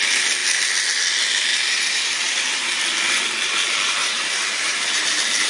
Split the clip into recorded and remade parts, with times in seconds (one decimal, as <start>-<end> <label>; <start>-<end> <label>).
0.0-1.5 recorded; 1.5-2.7 remade; 2.7-4.0 recorded; 4.0-4.9 remade; 4.9-5.5 recorded